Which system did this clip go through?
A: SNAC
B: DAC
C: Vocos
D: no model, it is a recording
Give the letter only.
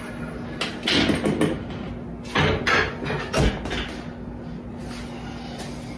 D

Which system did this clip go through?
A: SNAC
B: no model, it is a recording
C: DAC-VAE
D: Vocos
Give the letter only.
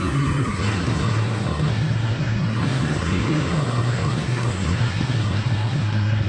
A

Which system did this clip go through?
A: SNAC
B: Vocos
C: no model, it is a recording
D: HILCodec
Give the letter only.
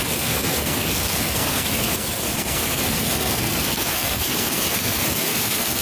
A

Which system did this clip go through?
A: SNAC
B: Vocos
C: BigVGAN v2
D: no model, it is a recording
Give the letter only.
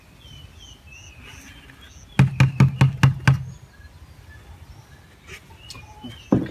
D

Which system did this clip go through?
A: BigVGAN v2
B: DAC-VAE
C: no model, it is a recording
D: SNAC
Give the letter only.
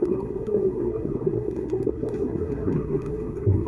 D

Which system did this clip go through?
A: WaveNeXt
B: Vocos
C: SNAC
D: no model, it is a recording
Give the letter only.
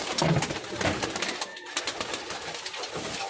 D